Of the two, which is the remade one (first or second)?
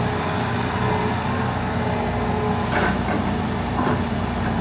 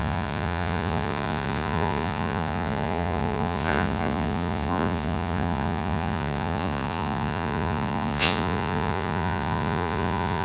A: second